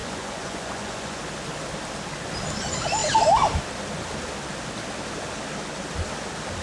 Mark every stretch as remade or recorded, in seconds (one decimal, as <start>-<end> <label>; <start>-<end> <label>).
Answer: 0.0-1.2 remade; 1.2-6.6 recorded